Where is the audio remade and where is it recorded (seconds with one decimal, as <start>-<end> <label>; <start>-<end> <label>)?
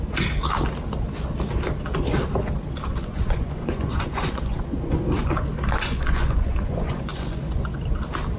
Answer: 0.0-2.9 recorded; 2.9-7.8 remade; 7.8-8.4 recorded